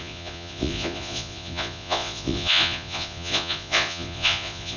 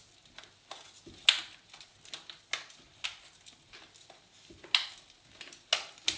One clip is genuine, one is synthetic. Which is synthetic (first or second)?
first